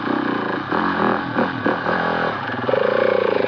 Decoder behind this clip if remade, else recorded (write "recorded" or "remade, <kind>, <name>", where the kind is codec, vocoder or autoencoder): remade, vocoder, BigVGAN v2